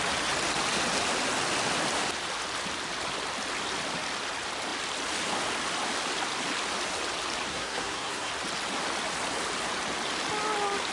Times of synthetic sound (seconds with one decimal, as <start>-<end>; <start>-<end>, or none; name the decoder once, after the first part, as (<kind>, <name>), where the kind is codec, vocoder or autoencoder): 7.5-8.3 (codec, SNAC)

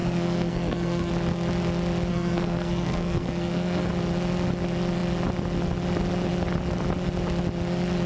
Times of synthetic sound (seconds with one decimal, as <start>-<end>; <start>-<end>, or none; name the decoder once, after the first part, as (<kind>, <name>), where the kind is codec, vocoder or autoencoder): 0.0-1.1 (codec, SNAC); 2.1-3.9

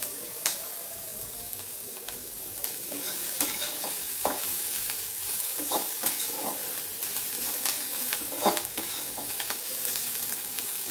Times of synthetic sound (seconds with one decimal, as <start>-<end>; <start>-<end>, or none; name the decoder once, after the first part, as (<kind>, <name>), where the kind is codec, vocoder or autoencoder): 0.0-6.6 (codec, DAC); 7.5-10.9

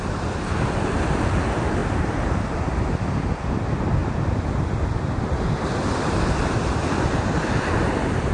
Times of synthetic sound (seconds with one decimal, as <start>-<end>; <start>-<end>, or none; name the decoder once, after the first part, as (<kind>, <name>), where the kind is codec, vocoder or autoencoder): none

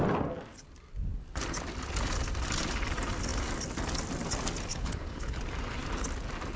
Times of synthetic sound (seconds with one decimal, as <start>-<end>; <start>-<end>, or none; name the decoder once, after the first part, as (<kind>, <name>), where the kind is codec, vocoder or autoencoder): 4.7-5.4 (codec, HILCodec)

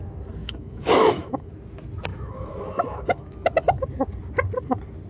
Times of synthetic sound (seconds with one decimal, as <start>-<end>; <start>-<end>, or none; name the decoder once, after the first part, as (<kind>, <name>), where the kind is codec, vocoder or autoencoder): 0.4-1.5 (autoencoder, DAC-VAE); 2.1-3.8

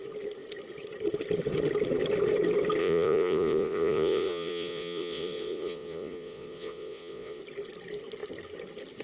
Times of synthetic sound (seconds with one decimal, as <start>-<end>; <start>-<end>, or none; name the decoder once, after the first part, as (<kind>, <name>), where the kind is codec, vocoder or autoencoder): 2.8-7.4 (vocoder, Vocos)